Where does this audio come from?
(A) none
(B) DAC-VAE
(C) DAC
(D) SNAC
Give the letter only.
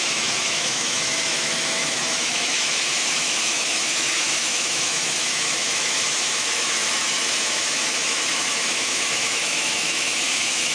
B